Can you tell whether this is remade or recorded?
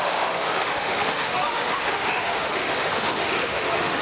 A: remade